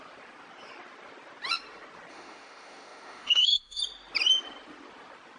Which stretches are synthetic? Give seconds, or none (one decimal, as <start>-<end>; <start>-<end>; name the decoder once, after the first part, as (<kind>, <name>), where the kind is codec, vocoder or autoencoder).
2.1-3.8 (autoencoder, DAC-VAE)